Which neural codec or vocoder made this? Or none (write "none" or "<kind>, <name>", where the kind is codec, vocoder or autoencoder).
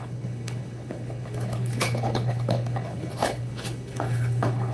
codec, HILCodec